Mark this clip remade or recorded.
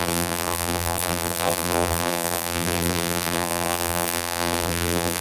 remade